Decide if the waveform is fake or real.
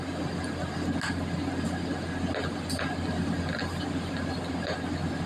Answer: real